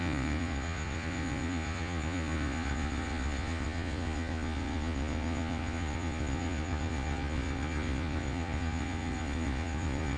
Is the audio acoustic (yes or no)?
no